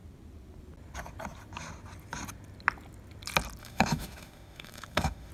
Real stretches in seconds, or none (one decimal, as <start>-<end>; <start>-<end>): 0.0-3.6